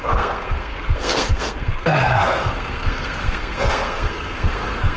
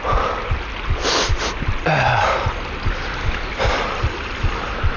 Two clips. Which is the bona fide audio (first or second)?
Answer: second